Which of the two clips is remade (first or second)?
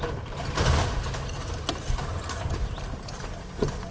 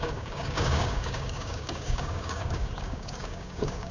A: second